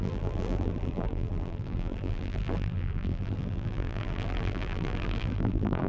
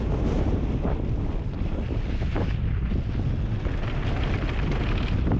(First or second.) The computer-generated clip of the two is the first